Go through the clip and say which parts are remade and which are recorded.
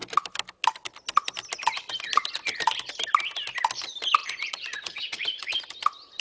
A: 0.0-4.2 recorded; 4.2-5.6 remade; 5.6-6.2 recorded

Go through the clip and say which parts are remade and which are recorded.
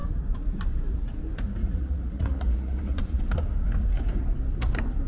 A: 0.0-1.6 recorded; 1.6-3.2 remade; 3.2-5.1 recorded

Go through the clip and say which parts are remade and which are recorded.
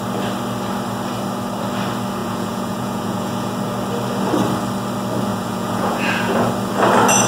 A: 0.0-2.2 recorded; 2.2-3.5 remade; 3.5-5.3 recorded; 5.3-6.5 remade; 6.5-7.3 recorded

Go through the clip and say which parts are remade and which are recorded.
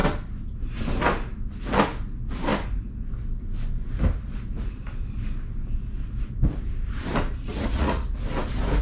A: 0.0-7.5 recorded; 7.5-8.1 remade; 8.1-8.8 recorded